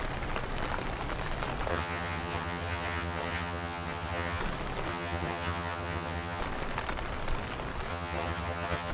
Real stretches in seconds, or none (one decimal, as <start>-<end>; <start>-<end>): 0.0-1.7; 4.4-4.9; 6.4-7.9